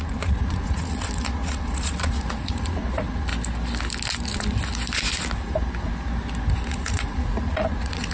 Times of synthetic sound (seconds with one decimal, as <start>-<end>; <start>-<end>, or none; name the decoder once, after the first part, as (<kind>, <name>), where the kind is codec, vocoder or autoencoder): 0.0-3.3 (vocoder, Vocos); 6.7-8.1

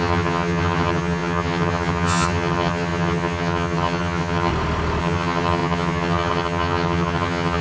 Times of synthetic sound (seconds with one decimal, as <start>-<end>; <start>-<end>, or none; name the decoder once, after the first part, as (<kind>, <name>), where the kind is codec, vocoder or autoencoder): 0.0-4.5 (vocoder, HiFi-GAN); 5.0-7.6

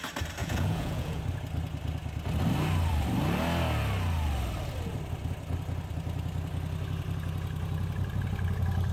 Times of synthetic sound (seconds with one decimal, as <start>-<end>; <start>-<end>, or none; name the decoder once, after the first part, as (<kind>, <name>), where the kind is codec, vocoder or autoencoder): 0.4-1.2 (vocoder, Vocos)